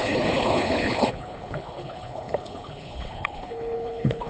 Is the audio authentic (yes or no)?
no